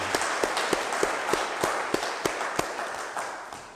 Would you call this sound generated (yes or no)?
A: no